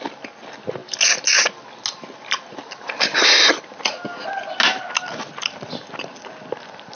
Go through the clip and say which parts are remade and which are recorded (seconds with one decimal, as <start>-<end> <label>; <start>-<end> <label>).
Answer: 0.0-7.0 recorded